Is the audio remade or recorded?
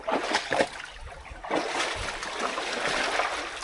recorded